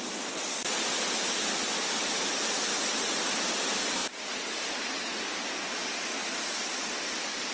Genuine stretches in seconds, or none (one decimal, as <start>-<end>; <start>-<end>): 0.0-7.5